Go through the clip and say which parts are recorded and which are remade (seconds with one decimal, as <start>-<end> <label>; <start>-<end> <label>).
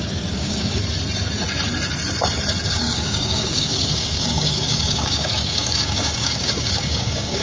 0.0-0.8 remade; 0.8-2.7 recorded; 2.7-7.4 remade